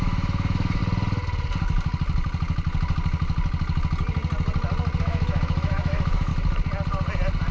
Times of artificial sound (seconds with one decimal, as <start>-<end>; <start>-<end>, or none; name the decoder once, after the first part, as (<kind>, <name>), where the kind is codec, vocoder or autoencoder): 0.0-0.8 (autoencoder, DAC-VAE); 5.0-6.3